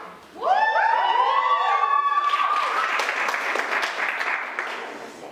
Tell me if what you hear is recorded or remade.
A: recorded